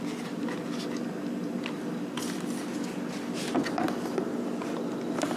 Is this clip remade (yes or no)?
no